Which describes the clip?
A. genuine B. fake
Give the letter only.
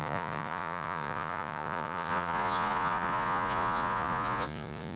B